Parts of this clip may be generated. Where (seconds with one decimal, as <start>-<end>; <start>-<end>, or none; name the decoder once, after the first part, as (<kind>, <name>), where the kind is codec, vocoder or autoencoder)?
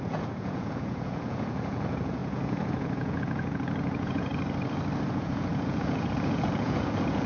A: 0.0-4.3 (vocoder, Vocos); 5.1-7.3